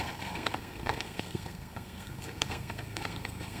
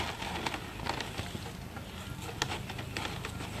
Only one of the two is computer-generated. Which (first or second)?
first